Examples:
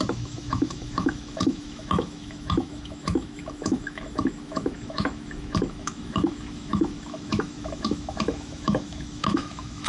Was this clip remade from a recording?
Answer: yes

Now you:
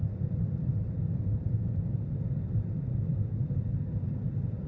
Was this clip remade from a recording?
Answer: no